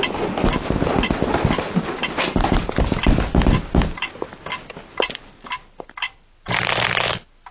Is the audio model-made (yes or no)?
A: no